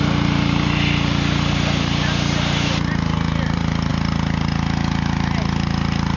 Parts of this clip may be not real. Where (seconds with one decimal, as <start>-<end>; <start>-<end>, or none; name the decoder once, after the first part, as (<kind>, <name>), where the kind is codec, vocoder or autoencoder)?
0.0-3.9 (vocoder, BigVGAN v2)